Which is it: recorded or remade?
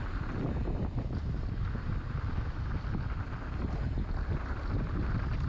recorded